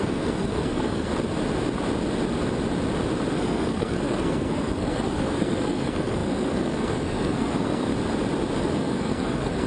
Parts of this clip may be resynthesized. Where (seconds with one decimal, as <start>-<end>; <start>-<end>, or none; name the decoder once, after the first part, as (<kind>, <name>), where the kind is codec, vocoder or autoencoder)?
0.0-1.1 (codec, SNAC); 3.3-7.9; 8.6-9.7